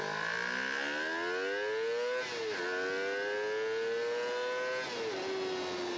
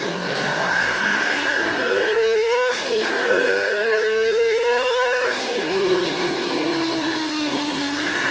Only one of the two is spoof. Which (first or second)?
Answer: second